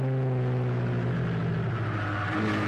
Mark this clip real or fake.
real